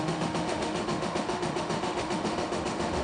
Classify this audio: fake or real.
fake